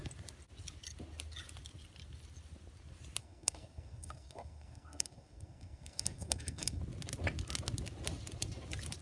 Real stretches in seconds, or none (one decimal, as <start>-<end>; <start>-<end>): 0.0-3.2; 6.8-9.0